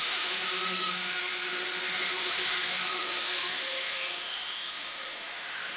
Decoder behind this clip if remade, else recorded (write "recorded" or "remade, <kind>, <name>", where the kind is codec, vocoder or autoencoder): remade, autoencoder, DAC-VAE